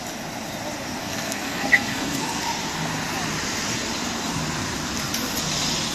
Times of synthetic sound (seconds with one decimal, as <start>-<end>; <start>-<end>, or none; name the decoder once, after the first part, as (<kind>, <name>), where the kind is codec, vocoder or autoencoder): 1.0-2.4 (codec, SNAC)